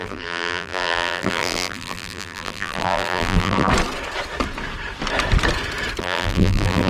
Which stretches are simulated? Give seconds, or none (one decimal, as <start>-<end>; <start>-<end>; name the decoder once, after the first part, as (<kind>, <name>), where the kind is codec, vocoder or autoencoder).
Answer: 0.0-3.7 (vocoder, BigVGAN v2); 6.0-6.9